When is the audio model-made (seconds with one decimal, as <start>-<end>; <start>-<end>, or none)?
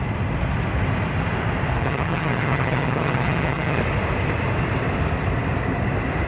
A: 1.8-3.8